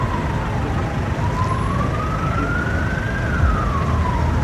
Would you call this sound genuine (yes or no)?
yes